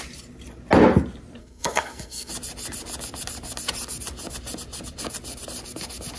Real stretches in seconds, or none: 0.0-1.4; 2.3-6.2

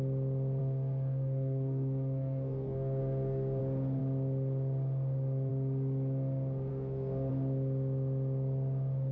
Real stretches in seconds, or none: 0.0-0.6; 3.6-6.7; 7.3-9.1

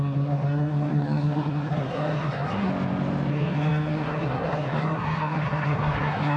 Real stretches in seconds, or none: 2.7-3.3

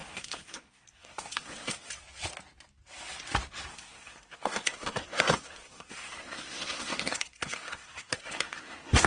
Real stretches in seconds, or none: 1.9-3.7